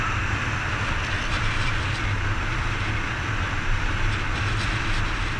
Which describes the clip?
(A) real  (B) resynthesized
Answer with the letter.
A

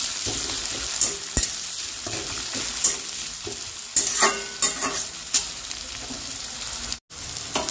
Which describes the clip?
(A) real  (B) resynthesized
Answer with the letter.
A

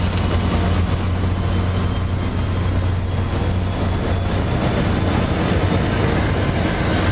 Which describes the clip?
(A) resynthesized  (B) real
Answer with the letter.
B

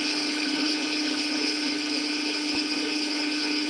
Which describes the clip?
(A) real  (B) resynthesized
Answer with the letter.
B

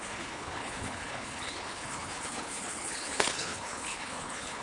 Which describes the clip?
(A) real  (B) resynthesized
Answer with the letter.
B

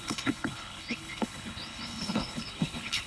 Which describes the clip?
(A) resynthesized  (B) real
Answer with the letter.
A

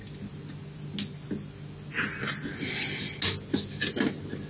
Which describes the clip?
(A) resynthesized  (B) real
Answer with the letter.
B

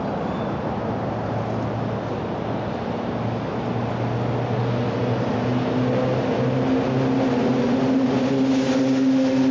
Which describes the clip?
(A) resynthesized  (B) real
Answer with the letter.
B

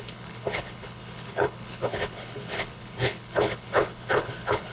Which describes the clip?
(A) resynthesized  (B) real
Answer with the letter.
A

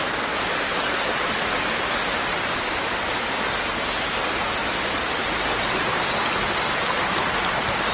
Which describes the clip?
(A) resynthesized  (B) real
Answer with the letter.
B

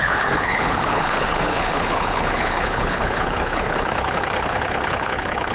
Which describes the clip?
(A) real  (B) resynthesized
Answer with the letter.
B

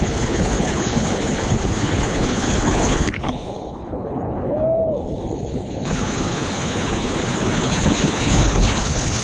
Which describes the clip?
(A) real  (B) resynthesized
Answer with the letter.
B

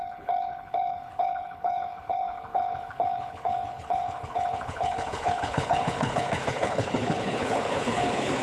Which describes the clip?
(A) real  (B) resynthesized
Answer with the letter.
B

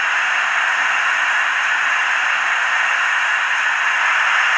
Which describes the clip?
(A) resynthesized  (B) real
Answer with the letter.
B